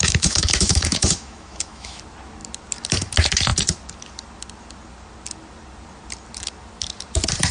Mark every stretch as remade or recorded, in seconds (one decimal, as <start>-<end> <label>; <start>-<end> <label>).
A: 0.0-2.0 remade; 2.0-7.5 recorded